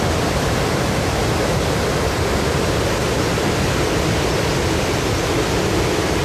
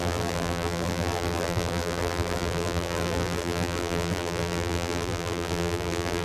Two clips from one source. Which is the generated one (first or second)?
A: second